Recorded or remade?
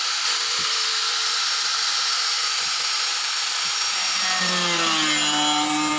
recorded